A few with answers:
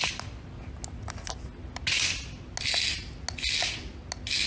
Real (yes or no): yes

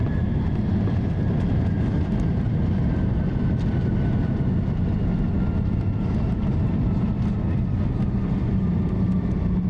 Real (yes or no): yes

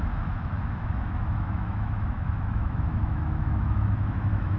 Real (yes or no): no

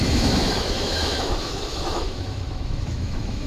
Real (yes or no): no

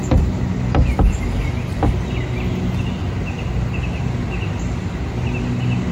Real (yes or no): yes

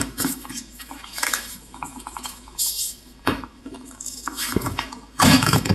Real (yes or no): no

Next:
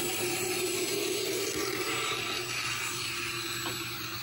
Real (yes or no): yes